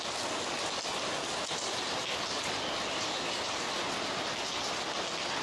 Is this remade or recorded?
recorded